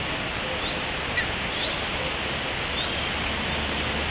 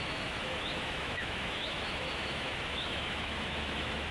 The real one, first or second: first